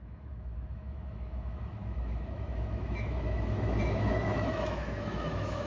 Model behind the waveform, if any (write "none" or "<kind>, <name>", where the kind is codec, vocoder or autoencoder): autoencoder, DAC-VAE